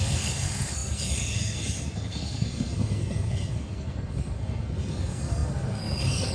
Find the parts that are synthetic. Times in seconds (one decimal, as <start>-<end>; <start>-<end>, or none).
0.0-6.3